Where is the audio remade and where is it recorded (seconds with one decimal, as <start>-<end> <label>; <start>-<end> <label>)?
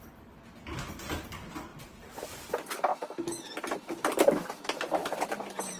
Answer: 0.0-1.7 recorded; 1.7-2.5 remade; 2.5-5.8 recorded